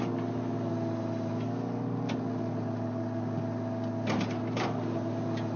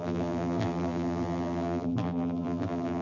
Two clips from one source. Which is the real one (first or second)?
first